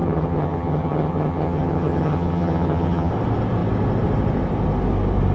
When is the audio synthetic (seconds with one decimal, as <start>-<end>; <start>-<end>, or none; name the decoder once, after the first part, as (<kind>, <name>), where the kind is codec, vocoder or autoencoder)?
0.0-3.1 (vocoder, HiFi-GAN)